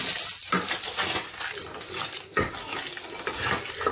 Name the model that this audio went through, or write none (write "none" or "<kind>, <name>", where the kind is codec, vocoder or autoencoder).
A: none